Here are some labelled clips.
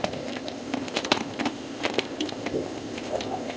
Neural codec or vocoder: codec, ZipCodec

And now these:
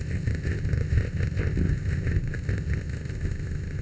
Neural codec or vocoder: codec, ZipCodec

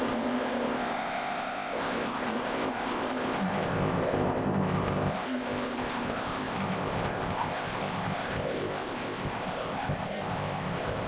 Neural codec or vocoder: codec, ZipCodec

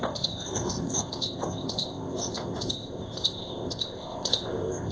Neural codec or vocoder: codec, ZipCodec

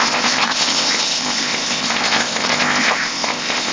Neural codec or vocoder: codec, ZipCodec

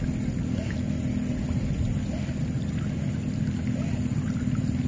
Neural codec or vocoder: none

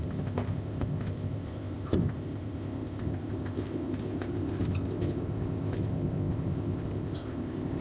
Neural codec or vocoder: codec, ZipCodec